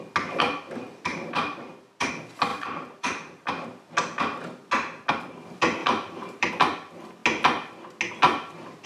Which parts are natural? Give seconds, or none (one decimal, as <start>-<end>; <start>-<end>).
0.0-1.1; 2.1-2.5; 3.5-5.8; 6.5-8.9